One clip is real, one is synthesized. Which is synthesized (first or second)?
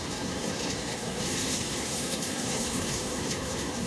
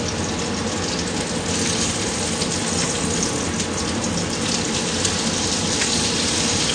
first